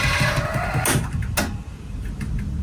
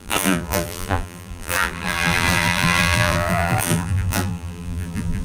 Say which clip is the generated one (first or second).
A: second